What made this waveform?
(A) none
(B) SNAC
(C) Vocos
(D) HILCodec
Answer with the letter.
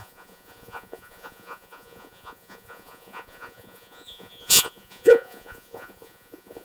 C